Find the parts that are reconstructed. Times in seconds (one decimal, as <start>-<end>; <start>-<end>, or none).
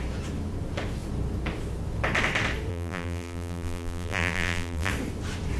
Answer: 2.7-4.9